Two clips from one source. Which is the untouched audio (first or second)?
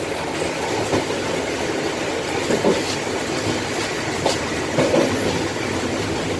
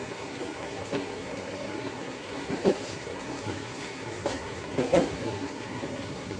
first